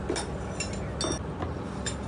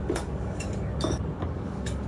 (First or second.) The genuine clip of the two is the first